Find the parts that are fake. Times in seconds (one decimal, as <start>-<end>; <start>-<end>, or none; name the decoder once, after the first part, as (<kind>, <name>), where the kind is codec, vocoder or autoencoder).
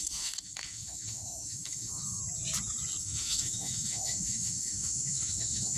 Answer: 0.0-2.2 (autoencoder, DAC-VAE); 3.0-5.8